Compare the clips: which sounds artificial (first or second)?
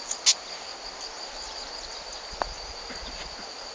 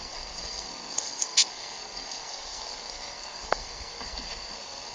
second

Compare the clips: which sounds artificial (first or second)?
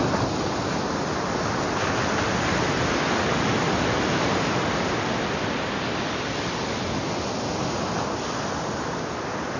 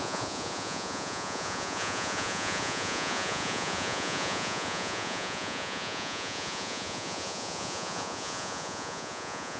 second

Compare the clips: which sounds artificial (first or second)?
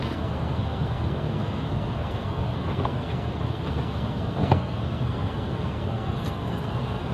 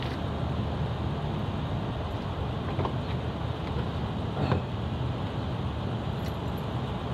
first